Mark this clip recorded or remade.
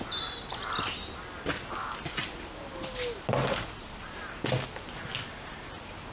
recorded